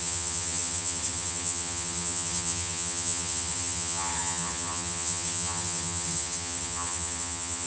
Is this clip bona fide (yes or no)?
no